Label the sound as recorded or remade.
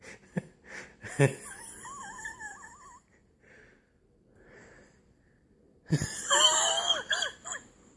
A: remade